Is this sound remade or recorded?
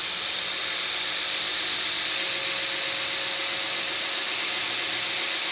recorded